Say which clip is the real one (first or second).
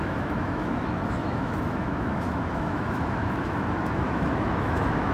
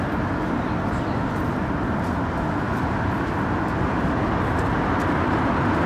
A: second